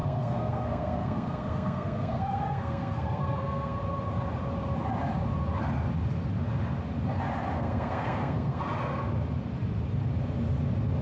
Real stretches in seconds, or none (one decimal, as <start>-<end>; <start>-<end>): 3.8-7.5; 8.6-11.0